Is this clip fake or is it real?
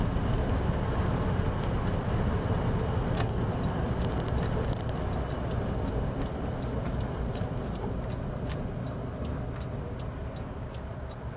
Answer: real